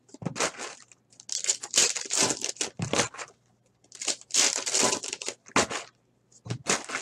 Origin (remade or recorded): recorded